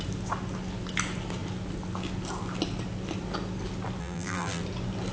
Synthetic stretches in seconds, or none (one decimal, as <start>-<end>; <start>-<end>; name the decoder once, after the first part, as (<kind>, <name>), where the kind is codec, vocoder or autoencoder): 4.0-4.6 (vocoder, BigVGAN v2)